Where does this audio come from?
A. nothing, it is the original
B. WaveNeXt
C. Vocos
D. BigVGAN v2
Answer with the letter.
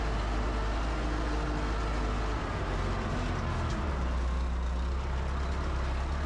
A